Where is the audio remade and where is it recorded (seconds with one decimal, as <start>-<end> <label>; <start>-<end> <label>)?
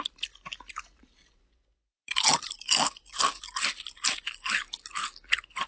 0.0-5.7 recorded